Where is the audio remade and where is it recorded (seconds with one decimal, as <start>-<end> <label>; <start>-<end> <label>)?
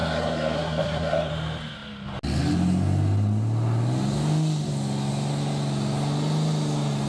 0.0-1.3 remade; 1.3-7.1 recorded